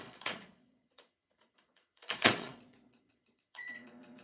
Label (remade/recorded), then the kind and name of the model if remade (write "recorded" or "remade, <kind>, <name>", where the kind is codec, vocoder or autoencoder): remade, vocoder, Vocos